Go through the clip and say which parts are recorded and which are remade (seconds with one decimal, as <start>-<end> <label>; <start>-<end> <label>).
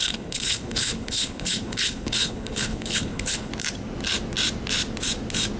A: 0.0-3.5 remade; 3.5-5.6 recorded